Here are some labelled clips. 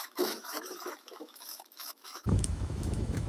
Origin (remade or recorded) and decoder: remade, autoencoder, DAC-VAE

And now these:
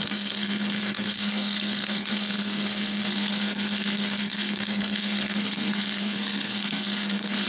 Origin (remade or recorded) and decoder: remade, codec, SNAC